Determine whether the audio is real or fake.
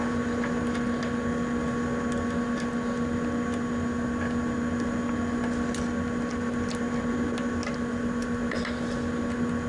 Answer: real